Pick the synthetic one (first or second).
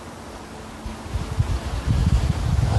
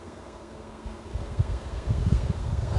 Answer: second